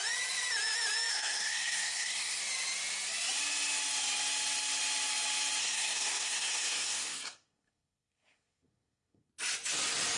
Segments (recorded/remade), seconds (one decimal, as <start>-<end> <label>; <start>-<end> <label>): 0.0-1.1 recorded; 1.1-2.4 remade; 2.4-5.6 recorded; 5.6-9.3 remade; 9.3-10.2 recorded